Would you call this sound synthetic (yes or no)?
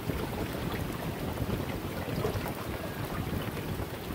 no